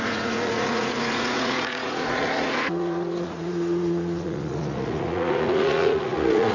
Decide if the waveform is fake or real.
fake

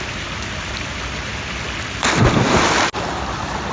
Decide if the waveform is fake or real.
real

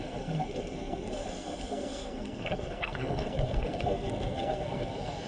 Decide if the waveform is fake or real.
fake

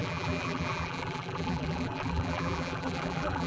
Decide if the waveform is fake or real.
fake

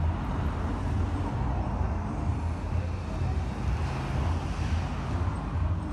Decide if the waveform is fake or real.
real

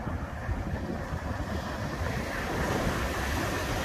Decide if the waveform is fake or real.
real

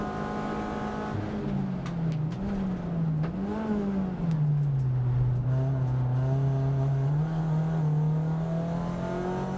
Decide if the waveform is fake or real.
real